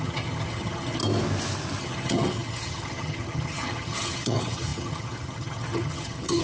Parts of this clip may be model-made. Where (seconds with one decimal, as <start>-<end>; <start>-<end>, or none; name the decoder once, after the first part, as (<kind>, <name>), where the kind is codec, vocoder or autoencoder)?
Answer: 0.0-1.0 (vocoder, HiFi-GAN); 1.8-6.4